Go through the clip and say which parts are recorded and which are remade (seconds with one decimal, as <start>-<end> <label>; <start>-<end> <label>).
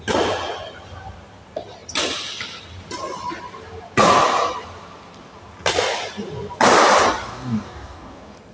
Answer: 0.0-7.3 recorded; 7.3-8.1 remade; 8.1-8.5 recorded